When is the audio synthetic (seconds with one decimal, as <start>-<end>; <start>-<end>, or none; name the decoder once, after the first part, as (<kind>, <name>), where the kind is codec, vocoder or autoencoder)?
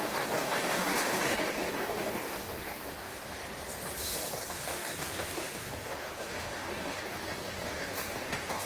0.0-3.4 (codec, DAC); 4.0-8.7